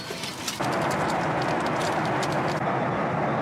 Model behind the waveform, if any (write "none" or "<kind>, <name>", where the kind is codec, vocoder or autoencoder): none